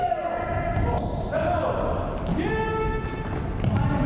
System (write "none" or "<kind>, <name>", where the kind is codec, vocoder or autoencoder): none